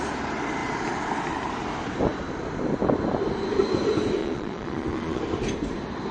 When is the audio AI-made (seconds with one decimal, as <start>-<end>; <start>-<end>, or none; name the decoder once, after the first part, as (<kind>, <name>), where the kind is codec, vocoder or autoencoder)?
4.2-5.2 (vocoder, Vocos)